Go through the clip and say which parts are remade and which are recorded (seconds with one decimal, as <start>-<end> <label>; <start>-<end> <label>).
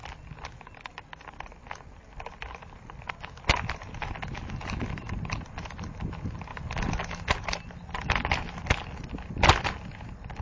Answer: 0.0-10.4 recorded